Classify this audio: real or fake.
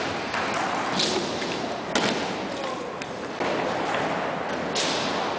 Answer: real